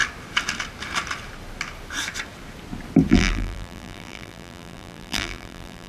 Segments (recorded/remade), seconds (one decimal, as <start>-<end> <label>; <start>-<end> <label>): 0.0-3.1 recorded; 3.1-5.9 remade